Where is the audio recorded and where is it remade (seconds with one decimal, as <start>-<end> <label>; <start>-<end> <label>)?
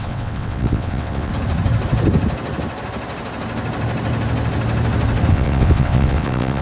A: 0.0-1.3 remade; 1.3-5.3 recorded; 5.3-6.6 remade